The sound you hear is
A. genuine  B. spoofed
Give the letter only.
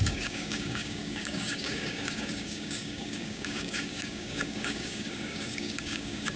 B